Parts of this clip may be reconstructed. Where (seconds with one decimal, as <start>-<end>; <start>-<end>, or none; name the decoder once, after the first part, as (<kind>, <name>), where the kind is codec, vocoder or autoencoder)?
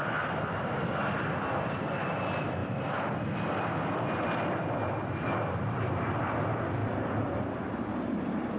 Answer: none